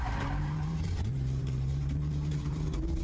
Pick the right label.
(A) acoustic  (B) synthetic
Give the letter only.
B